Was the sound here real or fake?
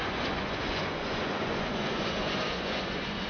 fake